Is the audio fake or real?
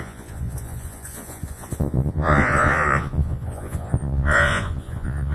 fake